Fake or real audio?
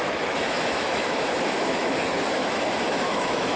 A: fake